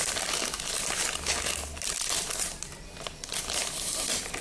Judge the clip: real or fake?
real